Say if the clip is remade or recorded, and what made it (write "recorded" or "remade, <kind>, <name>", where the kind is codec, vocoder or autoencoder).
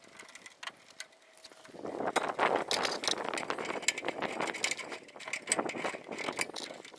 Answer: recorded